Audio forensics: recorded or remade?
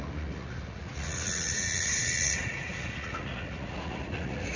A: remade